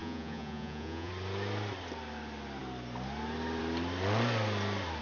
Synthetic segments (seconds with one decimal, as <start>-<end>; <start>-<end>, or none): 0.0-1.1